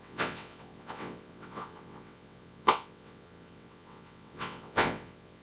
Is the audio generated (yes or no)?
yes